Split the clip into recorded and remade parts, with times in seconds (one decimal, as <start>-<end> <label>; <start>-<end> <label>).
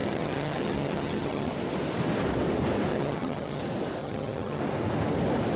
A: 0.0-1.5 remade; 1.5-2.9 recorded; 2.9-3.6 remade; 3.6-4.0 recorded; 4.0-4.6 remade; 4.6-5.6 recorded